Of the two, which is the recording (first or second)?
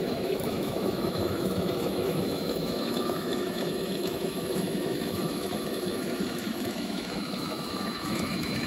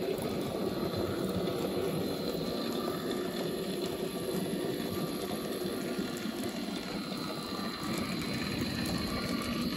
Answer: second